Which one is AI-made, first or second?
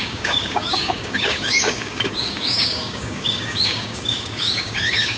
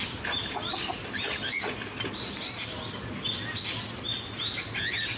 first